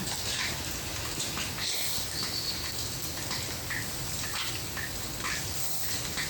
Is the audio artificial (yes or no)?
no